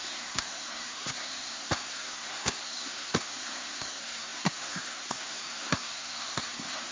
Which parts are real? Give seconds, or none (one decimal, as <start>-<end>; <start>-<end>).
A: none